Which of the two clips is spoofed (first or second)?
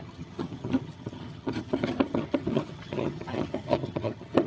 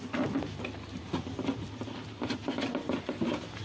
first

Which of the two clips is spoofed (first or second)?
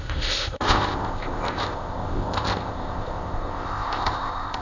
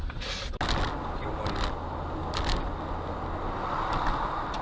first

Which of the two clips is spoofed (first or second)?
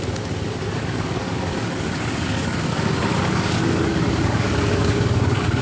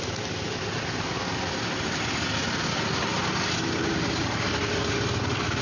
first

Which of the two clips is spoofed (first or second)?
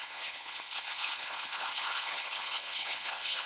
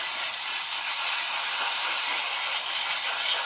first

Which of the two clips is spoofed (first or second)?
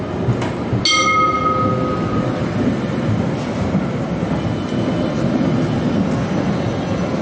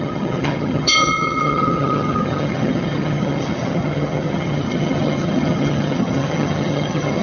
second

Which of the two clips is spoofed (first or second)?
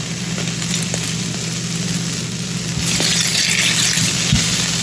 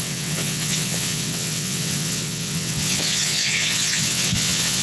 second